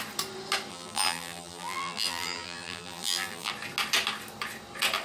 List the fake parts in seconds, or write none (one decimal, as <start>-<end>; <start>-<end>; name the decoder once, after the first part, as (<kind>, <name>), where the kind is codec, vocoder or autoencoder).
0.7-3.5 (vocoder, BigVGAN v2)